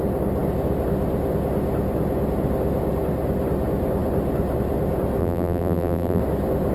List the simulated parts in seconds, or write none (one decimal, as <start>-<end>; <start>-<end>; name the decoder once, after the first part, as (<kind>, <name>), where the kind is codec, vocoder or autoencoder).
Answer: 5.2-6.2 (vocoder, BigVGAN v2)